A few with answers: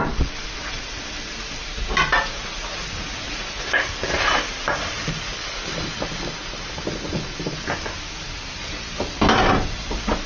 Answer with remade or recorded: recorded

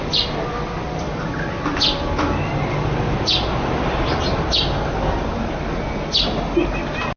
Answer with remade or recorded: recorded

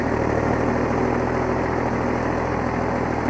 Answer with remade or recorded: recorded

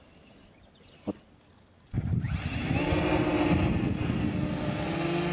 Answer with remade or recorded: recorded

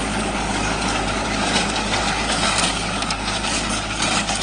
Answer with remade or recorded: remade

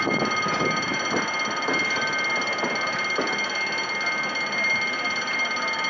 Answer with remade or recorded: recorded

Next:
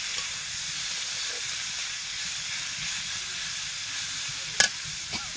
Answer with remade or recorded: recorded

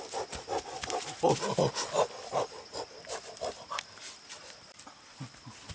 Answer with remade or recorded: recorded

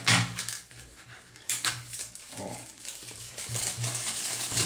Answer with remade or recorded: remade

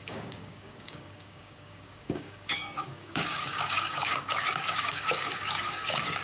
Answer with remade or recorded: remade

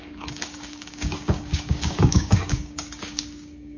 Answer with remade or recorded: remade